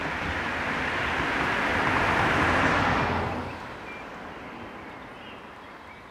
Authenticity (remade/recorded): recorded